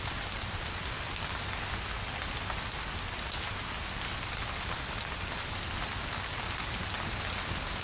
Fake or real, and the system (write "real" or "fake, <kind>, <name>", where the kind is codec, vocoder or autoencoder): real